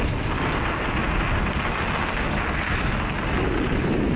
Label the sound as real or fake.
real